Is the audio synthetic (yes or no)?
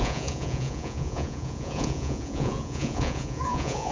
yes